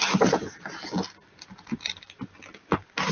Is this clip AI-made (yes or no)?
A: no